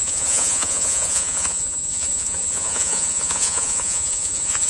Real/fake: fake